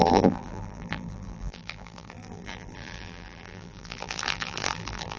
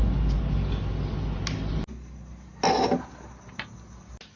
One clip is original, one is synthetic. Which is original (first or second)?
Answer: second